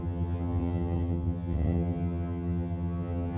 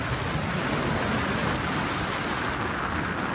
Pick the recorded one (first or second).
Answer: second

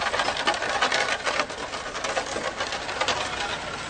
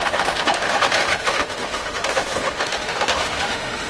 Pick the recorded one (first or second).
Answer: first